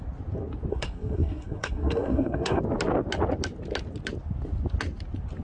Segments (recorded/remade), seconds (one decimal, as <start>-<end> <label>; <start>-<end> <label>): 0.0-0.7 recorded; 0.7-2.6 remade; 2.6-5.4 recorded